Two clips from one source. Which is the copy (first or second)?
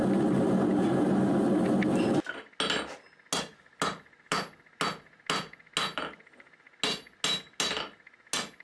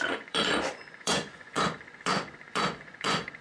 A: second